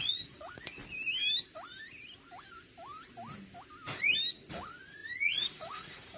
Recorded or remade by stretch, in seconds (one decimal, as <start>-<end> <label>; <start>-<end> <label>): 0.0-0.8 remade; 0.8-4.5 recorded; 4.5-6.2 remade